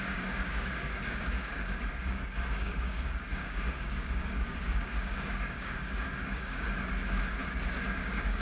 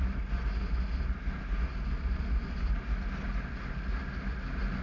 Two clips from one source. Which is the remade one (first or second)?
first